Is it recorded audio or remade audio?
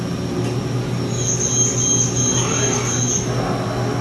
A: recorded